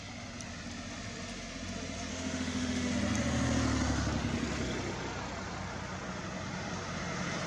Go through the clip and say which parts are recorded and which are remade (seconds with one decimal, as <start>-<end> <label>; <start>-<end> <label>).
0.0-2.1 recorded; 2.1-2.9 remade; 2.9-7.5 recorded